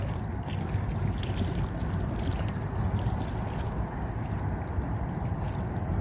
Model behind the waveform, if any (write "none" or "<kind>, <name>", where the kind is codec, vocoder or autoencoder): none